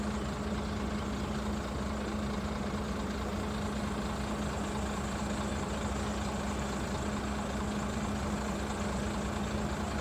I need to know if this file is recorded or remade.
recorded